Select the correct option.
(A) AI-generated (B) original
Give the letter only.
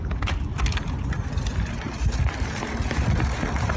B